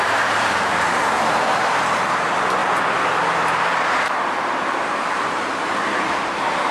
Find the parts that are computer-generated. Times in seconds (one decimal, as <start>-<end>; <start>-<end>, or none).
0.0-2.6; 3.6-6.7

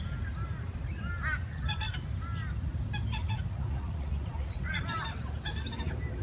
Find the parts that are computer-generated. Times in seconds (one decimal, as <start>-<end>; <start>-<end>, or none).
3.2-4.8